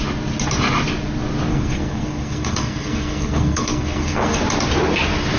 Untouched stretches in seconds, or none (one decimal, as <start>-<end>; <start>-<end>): 0.0-1.5; 4.4-5.4